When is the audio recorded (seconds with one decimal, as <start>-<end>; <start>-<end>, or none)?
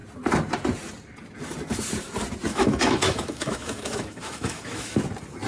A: 0.0-2.5; 5.0-5.5